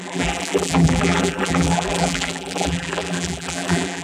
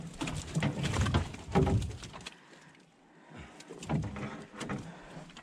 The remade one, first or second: first